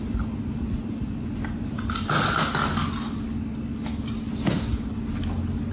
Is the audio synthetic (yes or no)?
no